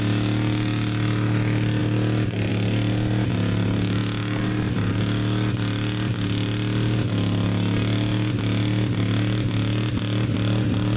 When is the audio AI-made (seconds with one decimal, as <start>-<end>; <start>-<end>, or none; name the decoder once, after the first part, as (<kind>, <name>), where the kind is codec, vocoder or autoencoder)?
none